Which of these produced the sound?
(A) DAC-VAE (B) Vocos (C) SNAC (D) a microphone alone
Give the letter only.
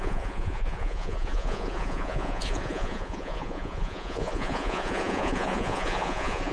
B